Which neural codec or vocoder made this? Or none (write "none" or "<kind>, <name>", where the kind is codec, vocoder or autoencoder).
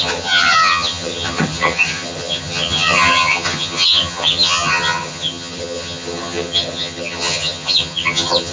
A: vocoder, HiFi-GAN